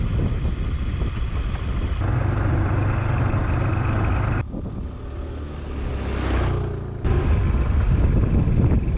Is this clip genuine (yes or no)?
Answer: yes